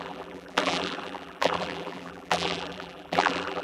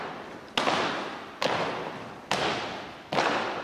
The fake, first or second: first